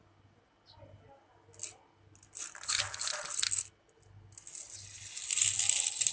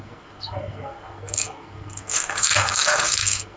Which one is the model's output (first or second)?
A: second